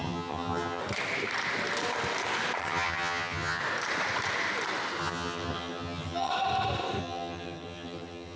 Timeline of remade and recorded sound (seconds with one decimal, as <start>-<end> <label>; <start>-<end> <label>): 0.0-0.8 remade; 0.8-2.6 recorded; 2.6-3.6 remade; 3.6-5.0 recorded; 5.0-6.3 remade; 6.3-7.0 recorded; 7.0-8.4 remade